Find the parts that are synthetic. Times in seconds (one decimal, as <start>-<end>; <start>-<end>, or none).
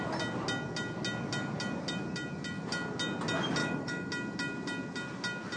3.6-4.1